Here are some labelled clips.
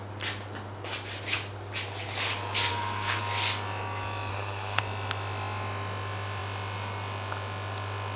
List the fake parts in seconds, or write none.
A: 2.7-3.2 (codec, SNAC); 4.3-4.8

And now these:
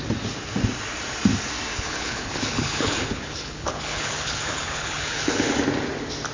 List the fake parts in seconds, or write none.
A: 1.7-5.5 (codec, HILCodec)

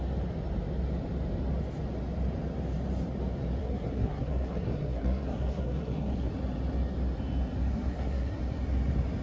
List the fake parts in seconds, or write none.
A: 3.6-6.3 (codec, SNAC); 7.7-8.4

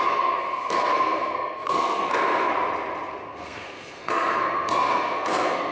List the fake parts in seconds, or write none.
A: 0.0-2.5 (codec, SNAC); 3.2-5.7

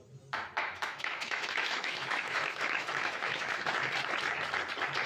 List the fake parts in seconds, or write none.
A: 0.6-3.7 (autoencoder, DAC-VAE)

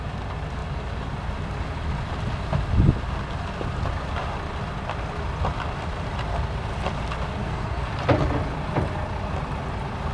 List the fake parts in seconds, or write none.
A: 7.4-7.9 (codec, SNAC)

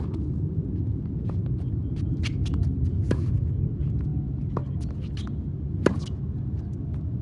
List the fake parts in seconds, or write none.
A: none